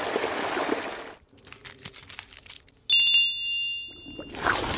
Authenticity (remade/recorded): recorded